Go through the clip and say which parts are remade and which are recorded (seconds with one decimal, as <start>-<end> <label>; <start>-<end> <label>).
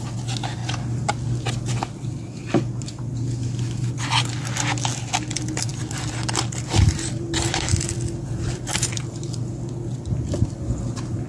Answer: 0.0-5.7 recorded; 5.7-9.0 remade; 9.0-11.3 recorded